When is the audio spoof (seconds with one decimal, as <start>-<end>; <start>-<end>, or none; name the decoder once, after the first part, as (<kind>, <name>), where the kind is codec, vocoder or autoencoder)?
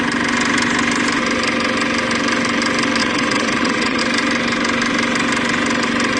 3.0-4.0 (vocoder, WaveNeXt)